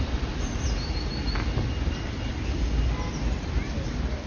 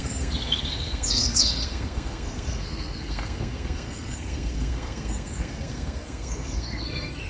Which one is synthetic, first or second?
second